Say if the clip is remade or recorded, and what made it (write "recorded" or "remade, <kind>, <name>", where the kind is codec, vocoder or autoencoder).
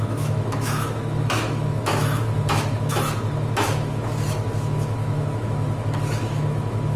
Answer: remade, autoencoder, DAC-VAE